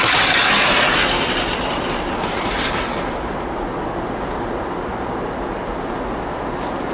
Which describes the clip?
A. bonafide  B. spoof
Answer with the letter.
A